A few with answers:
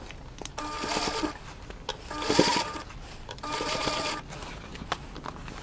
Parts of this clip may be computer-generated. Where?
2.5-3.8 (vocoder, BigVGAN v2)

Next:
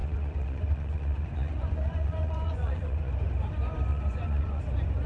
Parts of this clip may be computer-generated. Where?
0.0-3.1 (vocoder, Vocos); 3.9-4.6

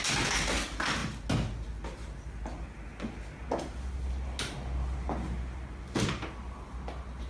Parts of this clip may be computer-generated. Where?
none

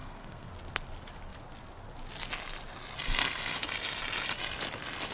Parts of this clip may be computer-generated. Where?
0.0-0.5 (codec, SNAC)

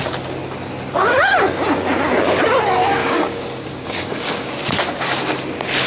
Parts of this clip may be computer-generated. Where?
3.0-4.5 (codec, DAC)

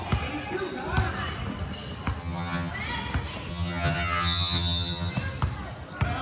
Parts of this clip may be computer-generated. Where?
2.2-2.7 (vocoder, HiFi-GAN); 3.5-5.1

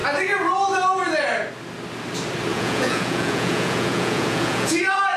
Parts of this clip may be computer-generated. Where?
2.5-4.8 (vocoder, Vocos)

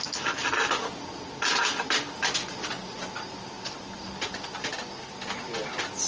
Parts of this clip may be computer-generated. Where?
none